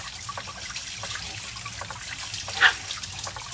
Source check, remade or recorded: recorded